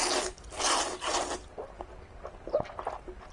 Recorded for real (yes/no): yes